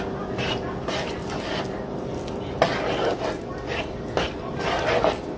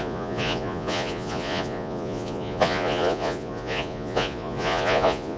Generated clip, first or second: second